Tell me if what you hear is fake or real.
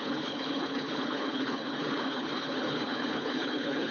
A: fake